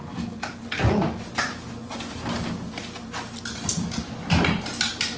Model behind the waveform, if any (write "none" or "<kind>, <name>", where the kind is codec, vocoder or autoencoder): none